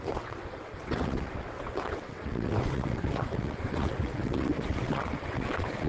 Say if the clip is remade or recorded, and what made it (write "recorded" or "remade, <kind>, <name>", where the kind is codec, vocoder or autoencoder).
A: remade, vocoder, WaveNeXt